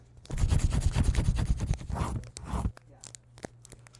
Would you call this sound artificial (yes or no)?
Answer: no